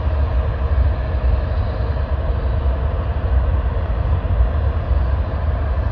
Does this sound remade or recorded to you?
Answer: recorded